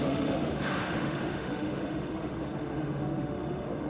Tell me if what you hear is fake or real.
fake